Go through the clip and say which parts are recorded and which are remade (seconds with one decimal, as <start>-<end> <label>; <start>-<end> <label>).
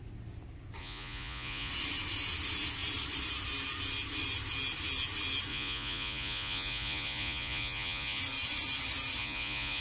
0.0-0.8 recorded; 0.8-1.7 remade; 1.7-5.5 recorded; 5.5-8.2 remade; 8.2-9.2 recorded; 9.2-9.8 remade